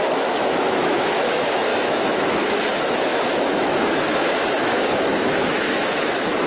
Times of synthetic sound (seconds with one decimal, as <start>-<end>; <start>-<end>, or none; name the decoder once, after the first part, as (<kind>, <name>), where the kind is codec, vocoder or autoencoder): 0.0-6.5 (autoencoder, DAC-VAE)